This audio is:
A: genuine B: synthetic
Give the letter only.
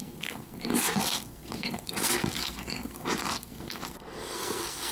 B